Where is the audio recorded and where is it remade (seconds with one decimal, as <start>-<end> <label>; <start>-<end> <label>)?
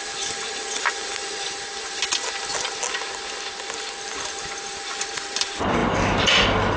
0.0-5.8 recorded; 5.8-6.8 remade